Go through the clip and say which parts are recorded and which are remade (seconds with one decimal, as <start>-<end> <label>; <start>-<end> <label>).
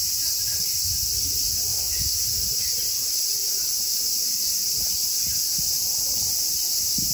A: 0.0-1.7 remade; 1.7-2.6 recorded; 2.6-3.4 remade; 3.4-6.3 recorded; 6.3-7.1 remade